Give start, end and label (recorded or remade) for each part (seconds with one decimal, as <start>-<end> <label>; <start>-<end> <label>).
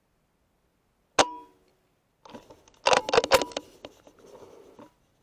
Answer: 0.0-5.2 recorded